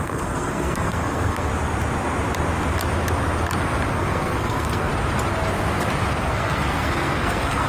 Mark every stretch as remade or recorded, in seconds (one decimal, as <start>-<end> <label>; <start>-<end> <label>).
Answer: 0.0-1.5 remade; 1.5-3.9 recorded; 3.9-4.9 remade; 4.9-6.2 recorded; 6.2-7.7 remade